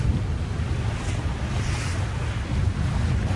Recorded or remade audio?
recorded